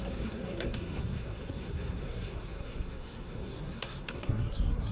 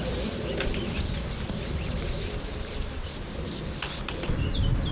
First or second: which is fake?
first